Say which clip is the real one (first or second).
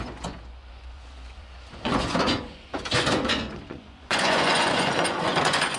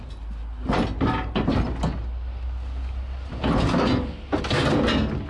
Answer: second